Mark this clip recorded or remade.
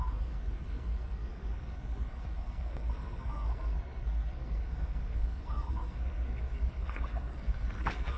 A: remade